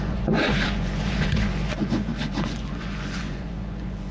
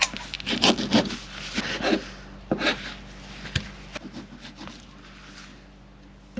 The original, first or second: second